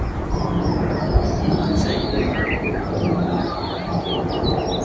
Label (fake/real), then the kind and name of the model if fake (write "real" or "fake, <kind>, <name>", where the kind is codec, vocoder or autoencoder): real